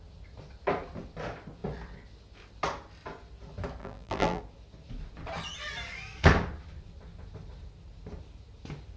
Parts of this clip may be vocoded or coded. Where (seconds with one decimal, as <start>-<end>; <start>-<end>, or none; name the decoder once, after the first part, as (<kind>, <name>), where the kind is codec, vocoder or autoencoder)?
3.8-4.4 (vocoder, BigVGAN v2)